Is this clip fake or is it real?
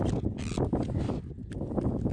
real